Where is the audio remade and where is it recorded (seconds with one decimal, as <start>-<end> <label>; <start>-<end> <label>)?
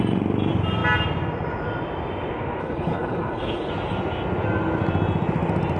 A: 0.0-2.6 recorded; 2.6-3.7 remade; 3.7-5.8 recorded